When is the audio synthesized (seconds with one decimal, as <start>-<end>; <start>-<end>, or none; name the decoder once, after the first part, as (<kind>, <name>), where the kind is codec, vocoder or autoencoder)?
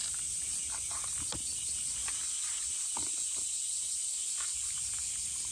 1.0-1.5 (vocoder, BigVGAN v2); 3.4-5.5